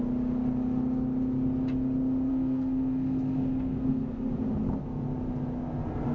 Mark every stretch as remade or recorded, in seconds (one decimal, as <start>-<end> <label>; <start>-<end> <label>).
0.0-2.3 recorded; 2.3-4.3 remade; 4.3-6.1 recorded